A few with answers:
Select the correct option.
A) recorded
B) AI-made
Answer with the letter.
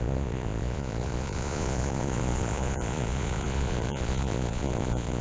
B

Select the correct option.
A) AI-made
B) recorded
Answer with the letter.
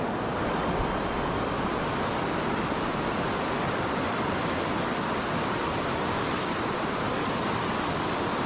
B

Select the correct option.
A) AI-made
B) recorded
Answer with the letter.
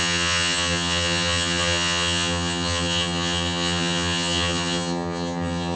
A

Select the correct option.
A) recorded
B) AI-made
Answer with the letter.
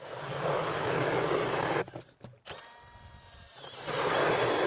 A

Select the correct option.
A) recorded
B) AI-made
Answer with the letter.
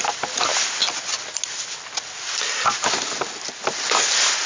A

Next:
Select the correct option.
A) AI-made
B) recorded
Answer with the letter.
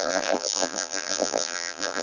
A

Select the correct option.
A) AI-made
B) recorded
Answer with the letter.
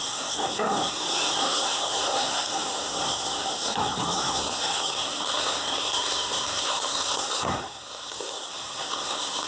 A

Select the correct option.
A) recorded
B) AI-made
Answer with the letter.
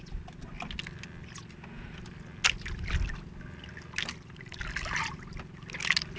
A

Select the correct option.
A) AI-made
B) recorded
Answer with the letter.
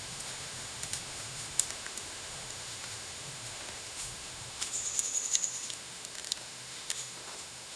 A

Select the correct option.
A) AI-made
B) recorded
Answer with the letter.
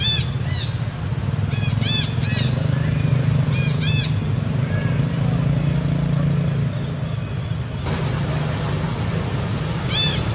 B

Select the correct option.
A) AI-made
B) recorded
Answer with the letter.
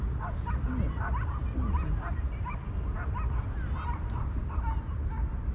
B